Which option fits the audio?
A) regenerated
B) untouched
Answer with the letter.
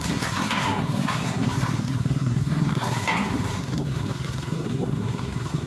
A